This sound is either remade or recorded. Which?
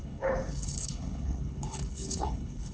remade